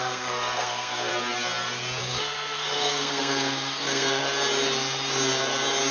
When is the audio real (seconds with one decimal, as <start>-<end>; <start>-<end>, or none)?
1.1-2.0; 4.2-5.9